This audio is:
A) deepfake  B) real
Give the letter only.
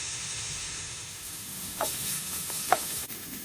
A